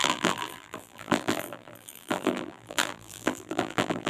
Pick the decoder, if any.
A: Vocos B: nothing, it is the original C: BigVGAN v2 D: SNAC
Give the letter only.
C